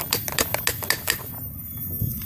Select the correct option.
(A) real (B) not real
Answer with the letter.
A